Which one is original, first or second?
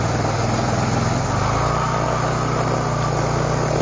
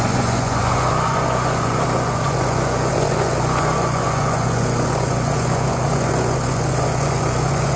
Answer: first